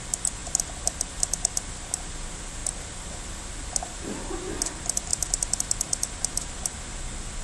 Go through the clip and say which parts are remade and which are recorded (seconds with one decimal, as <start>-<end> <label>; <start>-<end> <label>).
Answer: 0.0-7.4 recorded